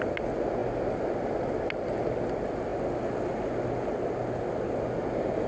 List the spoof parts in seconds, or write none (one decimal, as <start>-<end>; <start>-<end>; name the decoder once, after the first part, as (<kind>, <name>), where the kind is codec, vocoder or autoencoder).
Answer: none

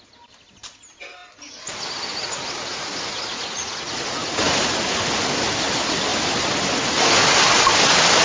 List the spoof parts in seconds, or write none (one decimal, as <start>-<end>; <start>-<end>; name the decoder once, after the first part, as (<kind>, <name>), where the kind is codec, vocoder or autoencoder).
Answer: 2.2-4.4 (vocoder, Vocos)

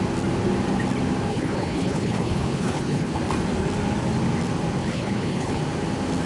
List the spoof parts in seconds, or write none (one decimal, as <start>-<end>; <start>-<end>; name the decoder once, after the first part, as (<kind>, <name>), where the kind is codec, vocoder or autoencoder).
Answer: 1.3-3.2 (codec, HILCodec); 4.8-5.6

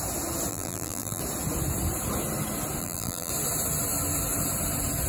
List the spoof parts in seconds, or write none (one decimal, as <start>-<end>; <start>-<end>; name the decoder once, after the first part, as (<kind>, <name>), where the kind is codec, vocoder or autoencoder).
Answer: 0.5-1.2 (vocoder, BigVGAN v2); 2.8-3.3